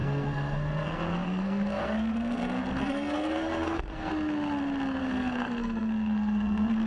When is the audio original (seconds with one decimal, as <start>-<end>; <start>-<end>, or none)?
4.1-5.0